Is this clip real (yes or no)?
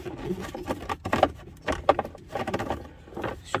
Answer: yes